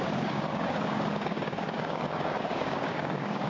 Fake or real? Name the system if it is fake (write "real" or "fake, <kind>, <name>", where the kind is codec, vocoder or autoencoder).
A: fake, codec, DAC